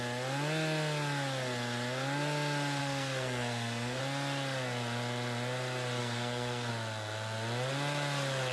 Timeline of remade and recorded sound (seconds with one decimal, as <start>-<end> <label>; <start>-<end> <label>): 0.0-2.8 recorded; 2.8-4.0 remade; 4.0-6.0 recorded; 6.0-6.7 remade; 6.7-8.5 recorded